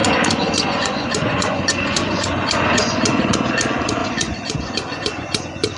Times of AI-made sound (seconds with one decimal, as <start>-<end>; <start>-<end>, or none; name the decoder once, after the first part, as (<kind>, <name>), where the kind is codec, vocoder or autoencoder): 0.0-3.5 (vocoder, Vocos); 4.0-5.8

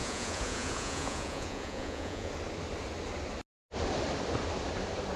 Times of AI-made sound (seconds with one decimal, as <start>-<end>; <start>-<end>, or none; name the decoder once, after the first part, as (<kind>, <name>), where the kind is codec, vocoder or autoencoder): 0.0-2.3 (vocoder, Vocos)

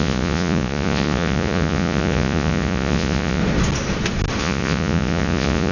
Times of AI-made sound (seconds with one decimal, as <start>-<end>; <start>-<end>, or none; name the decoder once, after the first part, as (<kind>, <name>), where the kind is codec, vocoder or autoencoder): 0.0-3.4 (vocoder, Vocos); 4.4-5.7

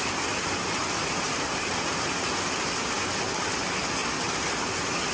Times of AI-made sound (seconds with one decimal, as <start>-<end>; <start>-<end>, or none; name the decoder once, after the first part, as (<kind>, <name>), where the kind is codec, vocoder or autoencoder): none

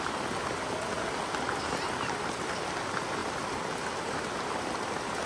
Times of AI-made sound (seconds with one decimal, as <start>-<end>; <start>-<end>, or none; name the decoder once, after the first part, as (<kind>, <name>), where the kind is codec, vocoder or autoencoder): none